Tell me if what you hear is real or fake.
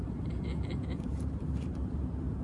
fake